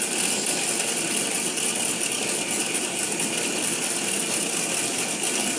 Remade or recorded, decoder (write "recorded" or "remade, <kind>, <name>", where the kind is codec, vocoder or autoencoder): recorded